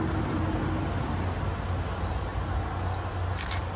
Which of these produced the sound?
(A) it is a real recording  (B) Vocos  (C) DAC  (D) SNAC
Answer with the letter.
A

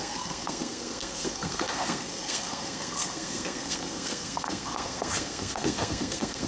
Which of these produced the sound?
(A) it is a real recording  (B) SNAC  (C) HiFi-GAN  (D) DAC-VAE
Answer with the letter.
B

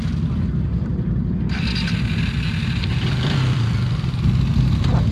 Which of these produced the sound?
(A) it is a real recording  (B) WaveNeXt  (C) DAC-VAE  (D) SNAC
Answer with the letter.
A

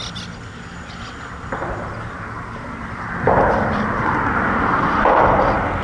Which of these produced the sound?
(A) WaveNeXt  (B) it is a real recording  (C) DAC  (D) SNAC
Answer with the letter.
B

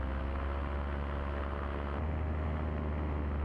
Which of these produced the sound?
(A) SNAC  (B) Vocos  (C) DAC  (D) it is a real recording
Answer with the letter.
D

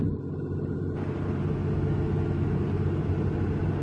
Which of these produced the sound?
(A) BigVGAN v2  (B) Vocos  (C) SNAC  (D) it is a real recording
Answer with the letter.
D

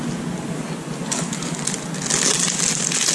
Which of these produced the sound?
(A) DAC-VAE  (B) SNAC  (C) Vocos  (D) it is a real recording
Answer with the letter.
D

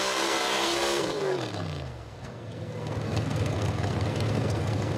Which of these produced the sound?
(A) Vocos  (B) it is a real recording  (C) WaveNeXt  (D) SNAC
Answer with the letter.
D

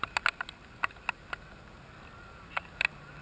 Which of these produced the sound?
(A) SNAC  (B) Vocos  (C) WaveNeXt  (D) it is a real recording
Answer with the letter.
D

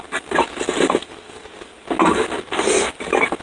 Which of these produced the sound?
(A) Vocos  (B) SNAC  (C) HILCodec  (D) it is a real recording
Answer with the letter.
D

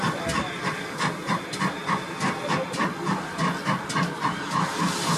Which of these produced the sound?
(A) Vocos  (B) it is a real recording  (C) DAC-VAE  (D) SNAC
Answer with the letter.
B